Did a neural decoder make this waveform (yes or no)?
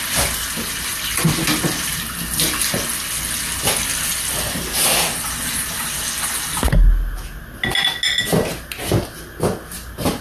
no